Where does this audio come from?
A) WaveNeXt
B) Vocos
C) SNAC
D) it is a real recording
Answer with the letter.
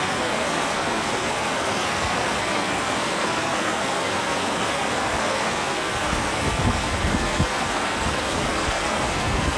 C